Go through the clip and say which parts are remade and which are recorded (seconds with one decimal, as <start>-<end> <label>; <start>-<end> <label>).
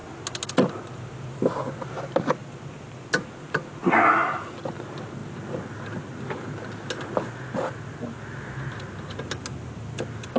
0.0-10.4 recorded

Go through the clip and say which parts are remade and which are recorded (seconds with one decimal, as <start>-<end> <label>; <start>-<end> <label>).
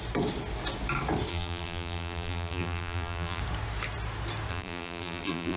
0.0-1.3 recorded; 1.3-3.4 remade; 3.4-4.5 recorded; 4.5-5.6 remade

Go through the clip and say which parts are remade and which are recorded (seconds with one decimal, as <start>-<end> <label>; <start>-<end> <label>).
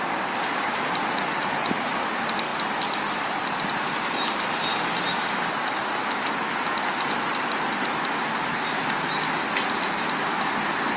0.0-11.0 recorded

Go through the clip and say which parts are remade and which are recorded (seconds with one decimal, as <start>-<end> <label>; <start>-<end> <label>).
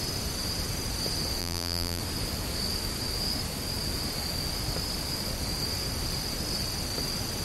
0.0-1.4 recorded; 1.4-2.0 remade; 2.0-7.4 recorded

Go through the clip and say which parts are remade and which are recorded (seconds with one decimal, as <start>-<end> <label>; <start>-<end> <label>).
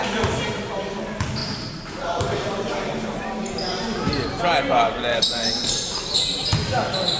0.0-1.4 recorded; 1.4-3.5 remade; 3.5-5.1 recorded; 5.1-5.7 remade; 5.7-7.2 recorded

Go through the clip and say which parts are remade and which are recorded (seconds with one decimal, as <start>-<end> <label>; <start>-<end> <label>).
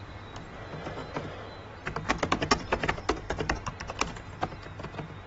0.0-3.2 recorded; 3.2-3.7 remade; 3.7-5.3 recorded